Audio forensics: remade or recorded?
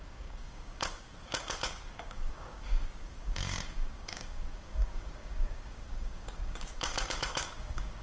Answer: remade